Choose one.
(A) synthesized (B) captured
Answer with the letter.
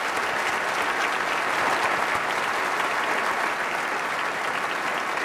B